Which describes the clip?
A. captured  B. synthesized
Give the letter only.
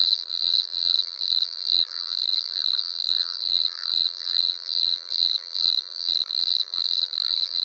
B